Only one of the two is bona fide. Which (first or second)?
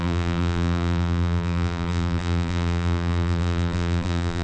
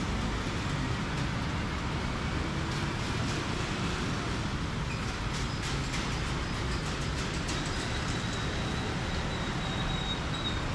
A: second